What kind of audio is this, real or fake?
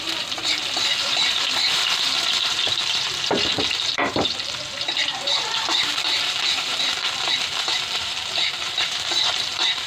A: fake